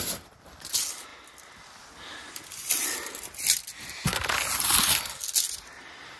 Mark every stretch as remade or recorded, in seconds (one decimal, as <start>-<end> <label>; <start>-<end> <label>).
0.0-6.2 recorded